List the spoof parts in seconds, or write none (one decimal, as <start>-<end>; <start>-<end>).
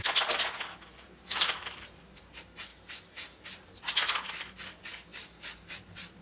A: 0.9-2.2; 2.7-3.7; 5.1-5.7